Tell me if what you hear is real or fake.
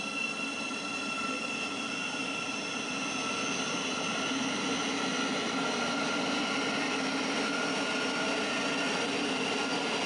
real